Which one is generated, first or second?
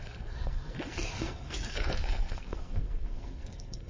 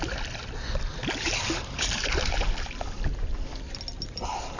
first